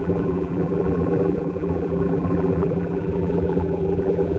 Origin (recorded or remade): remade